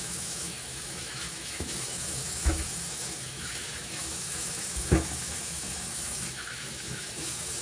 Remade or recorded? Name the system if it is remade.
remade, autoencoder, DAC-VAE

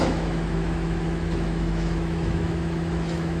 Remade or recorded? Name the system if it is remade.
remade, autoencoder, DAC-VAE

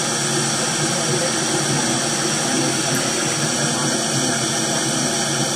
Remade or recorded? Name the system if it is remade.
recorded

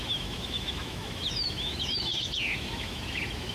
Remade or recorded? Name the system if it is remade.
remade, autoencoder, DAC-VAE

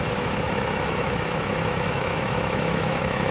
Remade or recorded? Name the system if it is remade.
remade, autoencoder, DAC-VAE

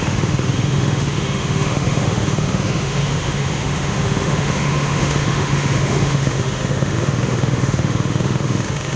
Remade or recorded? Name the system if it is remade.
remade, autoencoder, DAC-VAE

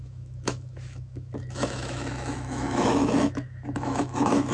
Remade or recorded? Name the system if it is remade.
remade, autoencoder, DAC-VAE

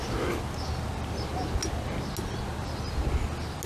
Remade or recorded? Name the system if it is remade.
recorded